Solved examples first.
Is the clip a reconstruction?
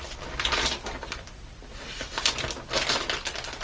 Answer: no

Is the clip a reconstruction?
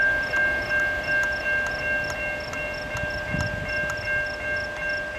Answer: no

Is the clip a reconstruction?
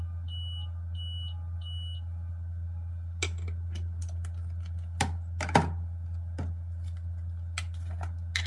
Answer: no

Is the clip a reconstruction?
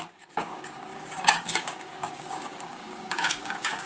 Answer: yes